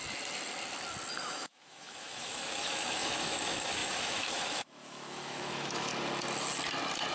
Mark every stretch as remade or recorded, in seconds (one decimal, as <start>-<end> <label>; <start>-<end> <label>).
0.0-1.2 recorded; 1.2-5.9 remade; 5.9-7.1 recorded